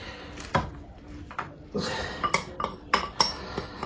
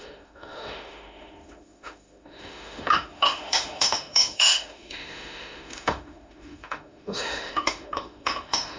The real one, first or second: first